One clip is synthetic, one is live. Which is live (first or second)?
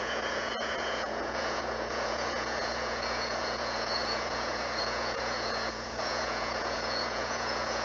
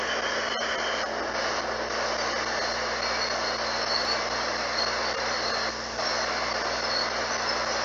second